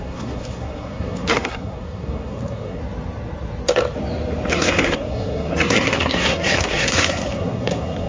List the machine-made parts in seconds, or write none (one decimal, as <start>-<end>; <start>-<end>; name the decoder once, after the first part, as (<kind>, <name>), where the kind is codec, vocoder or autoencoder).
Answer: 0.0-2.8 (codec, SNAC); 4.5-8.1